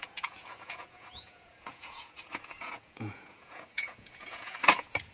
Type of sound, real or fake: fake